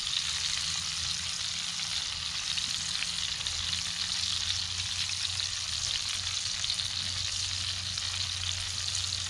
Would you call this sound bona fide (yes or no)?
yes